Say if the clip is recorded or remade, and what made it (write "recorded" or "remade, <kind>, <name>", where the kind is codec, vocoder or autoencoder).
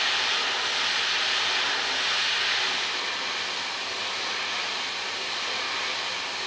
recorded